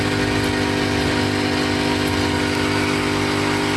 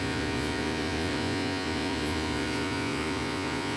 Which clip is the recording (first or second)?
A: first